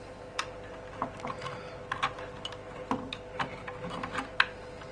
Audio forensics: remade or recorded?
recorded